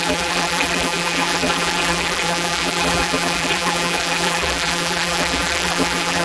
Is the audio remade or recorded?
remade